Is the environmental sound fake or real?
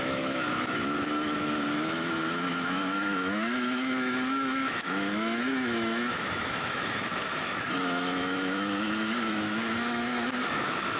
fake